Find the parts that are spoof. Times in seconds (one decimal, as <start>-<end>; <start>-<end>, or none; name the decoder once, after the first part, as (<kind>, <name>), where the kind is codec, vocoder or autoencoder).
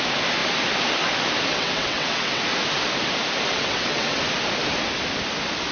1.5-2.4 (vocoder, WaveNeXt); 3.5-4.2